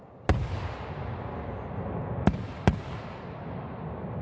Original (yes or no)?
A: yes